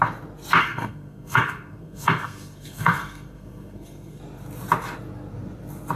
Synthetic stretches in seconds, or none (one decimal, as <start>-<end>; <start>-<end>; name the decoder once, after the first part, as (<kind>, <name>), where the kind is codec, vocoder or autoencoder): 0.6-4.2 (codec, SNAC)